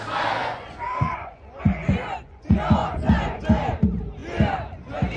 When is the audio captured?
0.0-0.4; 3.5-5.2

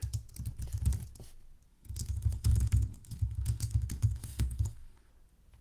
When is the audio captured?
0.0-1.7; 5.1-5.6

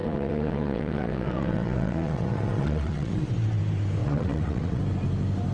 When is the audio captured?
3.3-4.0; 4.8-5.5

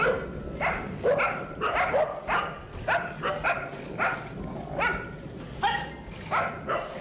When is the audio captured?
0.0-7.0

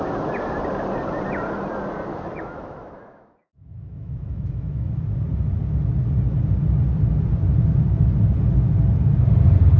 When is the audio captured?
0.0-2.1; 5.0-9.8